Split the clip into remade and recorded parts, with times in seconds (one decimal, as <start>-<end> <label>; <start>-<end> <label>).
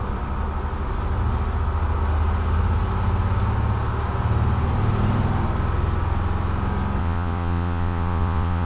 0.0-7.0 recorded; 7.0-8.7 remade